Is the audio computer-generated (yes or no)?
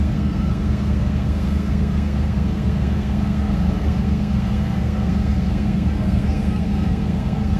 yes